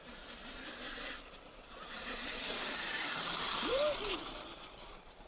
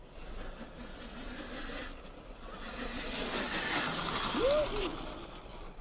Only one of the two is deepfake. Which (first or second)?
first